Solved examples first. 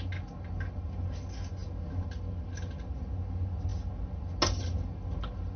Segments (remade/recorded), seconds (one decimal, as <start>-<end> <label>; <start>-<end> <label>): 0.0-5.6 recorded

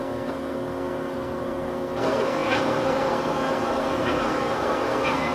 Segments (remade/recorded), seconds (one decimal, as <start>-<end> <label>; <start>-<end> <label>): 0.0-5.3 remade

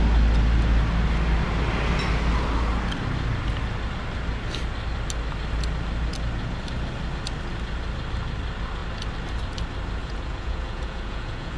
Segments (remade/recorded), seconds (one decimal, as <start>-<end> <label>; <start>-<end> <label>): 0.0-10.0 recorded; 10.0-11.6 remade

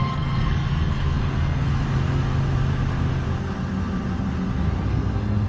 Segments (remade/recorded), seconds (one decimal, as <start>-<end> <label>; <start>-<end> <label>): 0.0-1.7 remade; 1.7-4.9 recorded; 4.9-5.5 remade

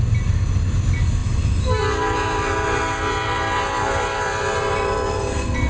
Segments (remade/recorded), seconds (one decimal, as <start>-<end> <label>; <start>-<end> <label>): 0.0-5.7 recorded

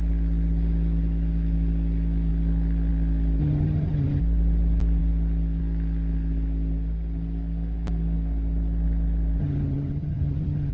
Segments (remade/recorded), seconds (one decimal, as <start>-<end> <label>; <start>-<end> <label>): 0.0-3.4 recorded; 3.4-4.2 remade; 4.2-9.4 recorded; 9.4-10.7 remade